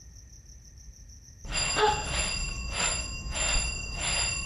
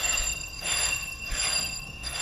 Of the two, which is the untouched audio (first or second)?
first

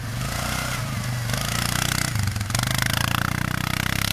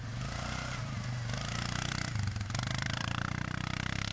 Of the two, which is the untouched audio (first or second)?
first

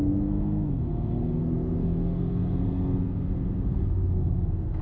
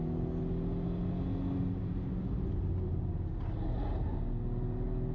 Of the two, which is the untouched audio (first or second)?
second